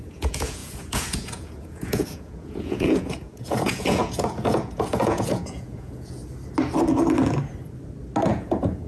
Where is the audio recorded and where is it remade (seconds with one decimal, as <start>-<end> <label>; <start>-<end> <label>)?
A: 0.0-6.2 remade; 6.2-8.3 recorded; 8.3-8.9 remade